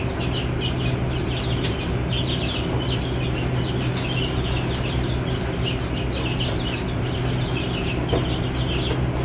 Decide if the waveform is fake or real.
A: real